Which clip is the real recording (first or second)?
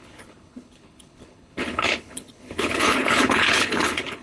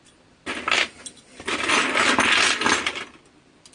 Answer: second